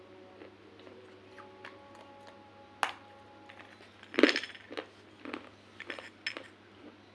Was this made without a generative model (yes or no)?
yes